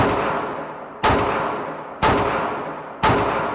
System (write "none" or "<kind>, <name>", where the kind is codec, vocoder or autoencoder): none